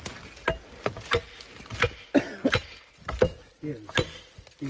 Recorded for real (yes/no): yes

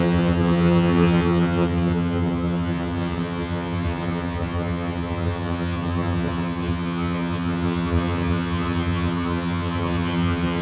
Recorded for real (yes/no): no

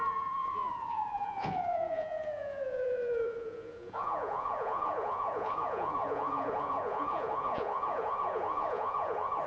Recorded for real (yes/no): no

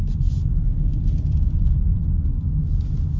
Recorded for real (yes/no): yes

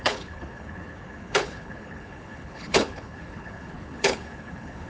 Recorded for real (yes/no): no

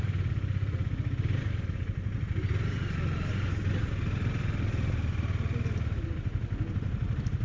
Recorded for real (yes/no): yes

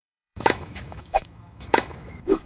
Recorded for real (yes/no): no